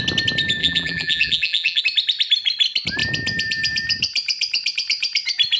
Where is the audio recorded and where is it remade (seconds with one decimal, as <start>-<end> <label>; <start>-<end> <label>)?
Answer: 0.0-0.6 recorded; 0.6-1.8 remade; 1.8-5.6 recorded